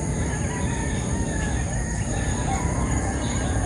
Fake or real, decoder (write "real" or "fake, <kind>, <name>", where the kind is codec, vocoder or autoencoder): real